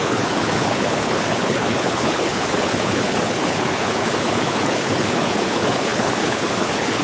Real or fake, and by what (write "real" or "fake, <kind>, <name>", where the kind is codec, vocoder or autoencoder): fake, codec, HILCodec